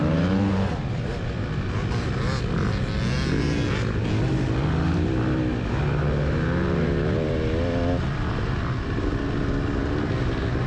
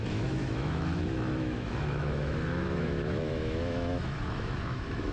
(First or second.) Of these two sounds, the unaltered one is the first